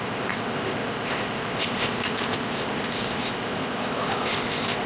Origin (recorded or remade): remade